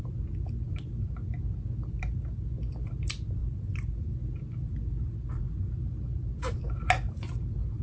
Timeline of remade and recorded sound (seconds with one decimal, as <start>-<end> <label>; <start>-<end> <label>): 0.0-7.8 recorded